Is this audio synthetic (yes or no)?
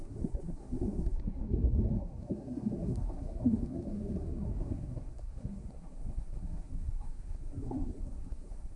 yes